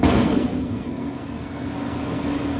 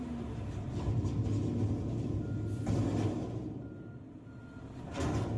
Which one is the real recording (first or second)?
second